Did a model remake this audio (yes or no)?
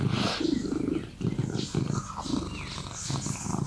no